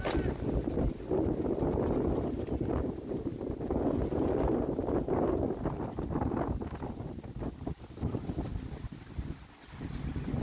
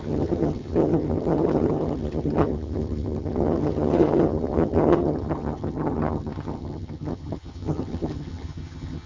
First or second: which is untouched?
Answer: first